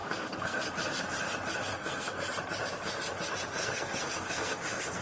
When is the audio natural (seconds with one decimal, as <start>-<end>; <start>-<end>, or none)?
0.7-1.7; 2.3-3.6